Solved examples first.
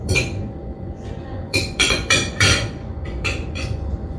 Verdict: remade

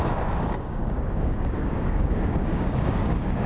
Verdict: remade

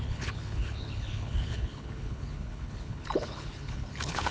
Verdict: remade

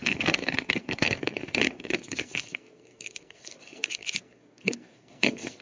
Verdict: remade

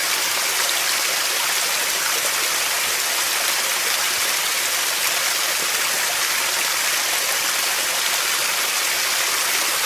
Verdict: recorded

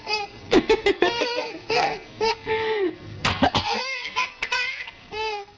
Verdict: remade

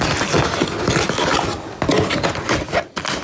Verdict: recorded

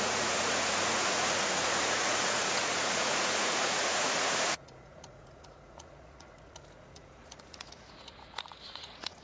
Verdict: remade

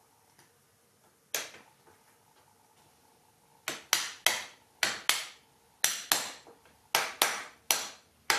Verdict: recorded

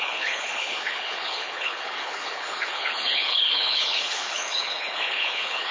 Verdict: remade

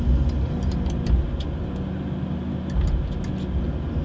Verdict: recorded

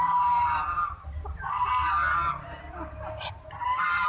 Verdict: recorded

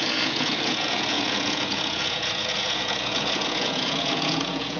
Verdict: remade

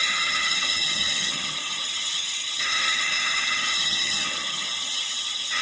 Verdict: remade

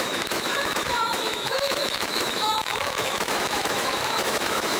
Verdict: remade